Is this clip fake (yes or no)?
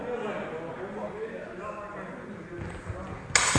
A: no